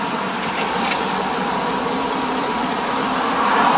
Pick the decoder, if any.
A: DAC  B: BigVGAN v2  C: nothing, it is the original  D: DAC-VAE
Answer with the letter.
B